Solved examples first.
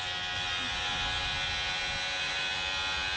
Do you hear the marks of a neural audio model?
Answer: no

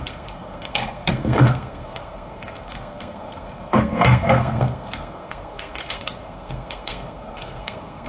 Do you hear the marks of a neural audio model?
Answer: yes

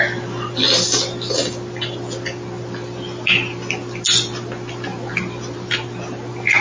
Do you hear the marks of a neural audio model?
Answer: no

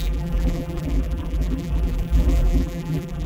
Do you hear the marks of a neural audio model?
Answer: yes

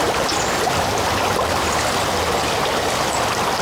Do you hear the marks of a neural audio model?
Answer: no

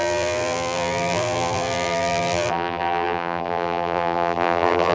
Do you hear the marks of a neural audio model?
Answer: yes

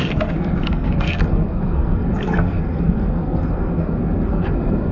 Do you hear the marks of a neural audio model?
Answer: yes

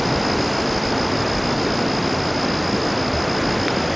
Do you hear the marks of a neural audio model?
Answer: no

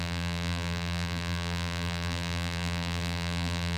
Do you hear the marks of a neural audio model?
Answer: yes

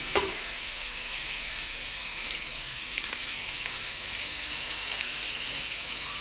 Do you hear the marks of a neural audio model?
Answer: yes